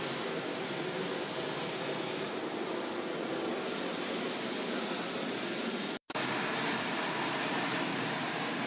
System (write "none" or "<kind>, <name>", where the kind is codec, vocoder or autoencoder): vocoder, BigVGAN v2